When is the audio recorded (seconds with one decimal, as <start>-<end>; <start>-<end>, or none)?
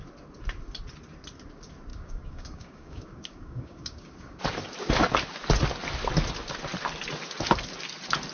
0.0-1.9; 4.4-8.3